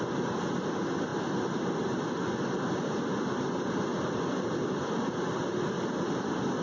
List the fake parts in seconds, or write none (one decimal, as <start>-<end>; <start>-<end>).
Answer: 3.9-5.7

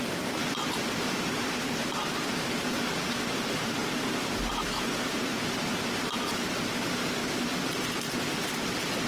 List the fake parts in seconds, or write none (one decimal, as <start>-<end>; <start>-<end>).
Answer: 0.0-3.8; 4.5-7.2

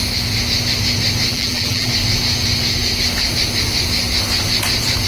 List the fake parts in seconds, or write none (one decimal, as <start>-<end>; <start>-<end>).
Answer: 1.3-1.9